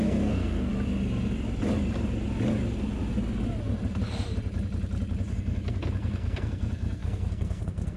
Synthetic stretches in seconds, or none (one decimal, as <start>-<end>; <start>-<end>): 0.0-0.7; 5.3-8.0